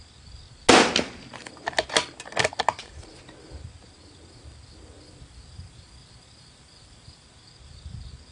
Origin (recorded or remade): recorded